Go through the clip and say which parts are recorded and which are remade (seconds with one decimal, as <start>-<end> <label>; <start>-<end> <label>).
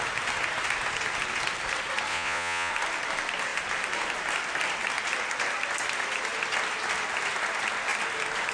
0.0-2.1 recorded; 2.1-2.7 remade; 2.7-8.5 recorded